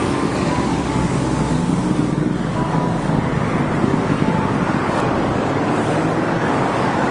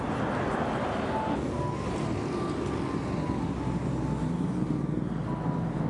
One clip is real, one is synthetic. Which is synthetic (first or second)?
first